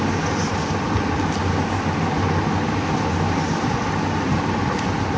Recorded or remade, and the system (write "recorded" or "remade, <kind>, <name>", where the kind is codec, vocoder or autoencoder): recorded